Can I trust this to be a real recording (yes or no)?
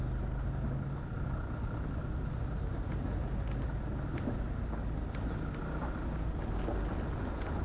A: yes